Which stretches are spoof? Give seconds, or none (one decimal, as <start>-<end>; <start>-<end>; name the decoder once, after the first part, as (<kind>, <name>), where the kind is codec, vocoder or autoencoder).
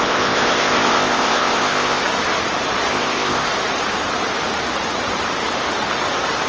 0.0-2.0 (codec, ZipCodec); 2.9-3.5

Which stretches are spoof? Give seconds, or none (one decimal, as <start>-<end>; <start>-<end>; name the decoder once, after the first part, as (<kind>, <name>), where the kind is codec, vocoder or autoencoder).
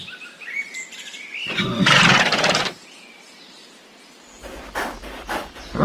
0.0-1.1 (vocoder, BigVGAN v2); 4.4-5.2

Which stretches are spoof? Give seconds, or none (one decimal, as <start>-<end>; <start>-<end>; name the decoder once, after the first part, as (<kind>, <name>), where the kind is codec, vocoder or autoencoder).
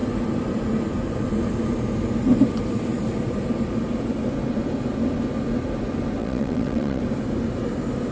6.2-7.0 (vocoder, WaveNeXt)